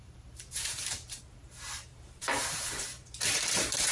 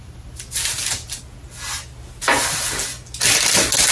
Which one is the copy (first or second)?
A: first